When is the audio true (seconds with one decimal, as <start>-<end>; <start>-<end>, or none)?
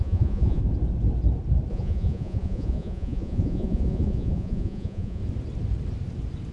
0.6-1.7; 5.2-6.5